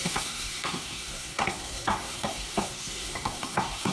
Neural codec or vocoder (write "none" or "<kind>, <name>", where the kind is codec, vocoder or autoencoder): codec, SNAC